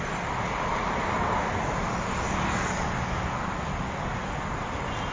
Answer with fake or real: real